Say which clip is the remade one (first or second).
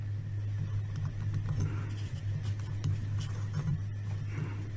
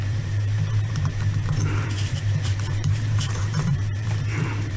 second